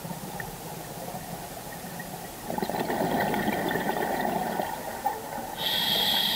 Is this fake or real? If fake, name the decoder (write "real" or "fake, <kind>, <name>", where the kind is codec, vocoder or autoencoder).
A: real